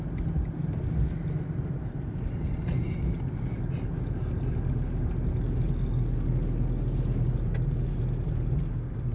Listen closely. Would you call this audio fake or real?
real